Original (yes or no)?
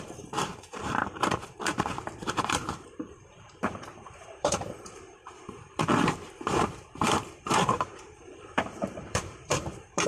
no